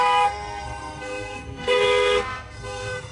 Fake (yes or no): yes